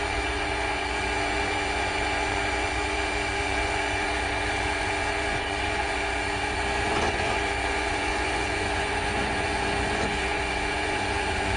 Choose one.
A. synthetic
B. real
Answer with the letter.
A